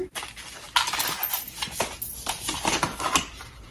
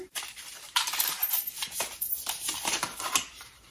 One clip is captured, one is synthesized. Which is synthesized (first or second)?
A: second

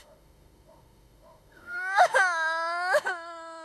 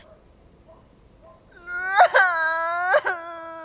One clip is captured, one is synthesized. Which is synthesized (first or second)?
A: first